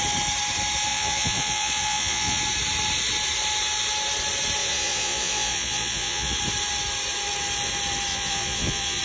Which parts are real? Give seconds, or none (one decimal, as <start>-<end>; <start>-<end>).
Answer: 0.0-0.9; 2.4-4.6; 6.4-8.1